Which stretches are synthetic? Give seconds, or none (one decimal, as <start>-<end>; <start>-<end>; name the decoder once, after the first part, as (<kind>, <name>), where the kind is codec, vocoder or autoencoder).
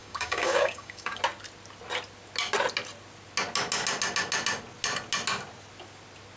0.0-1.2 (codec, DAC)